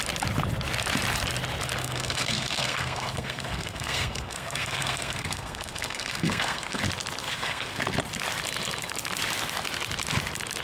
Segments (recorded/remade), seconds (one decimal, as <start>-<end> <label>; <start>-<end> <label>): 0.0-1.8 recorded; 1.8-6.8 remade; 6.8-7.2 recorded; 7.2-7.8 remade; 7.8-10.6 recorded